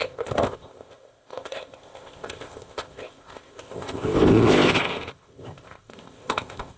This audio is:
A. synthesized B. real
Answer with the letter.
A